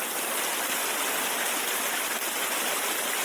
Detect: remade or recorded recorded